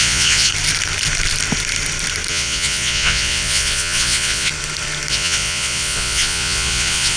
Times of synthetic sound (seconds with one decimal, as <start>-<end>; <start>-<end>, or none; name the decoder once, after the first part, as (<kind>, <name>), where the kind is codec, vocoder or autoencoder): 0.0-0.5 (vocoder, Vocos); 2.3-4.5; 5.1-7.2